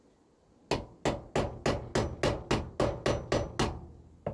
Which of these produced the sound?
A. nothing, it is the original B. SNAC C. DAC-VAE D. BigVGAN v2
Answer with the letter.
A